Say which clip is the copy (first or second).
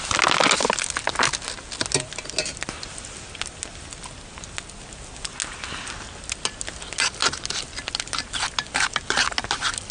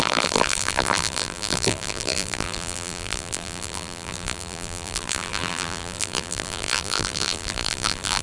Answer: second